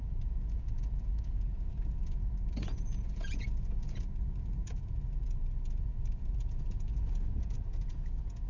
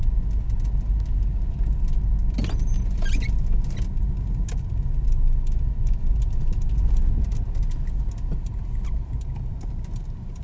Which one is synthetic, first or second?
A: first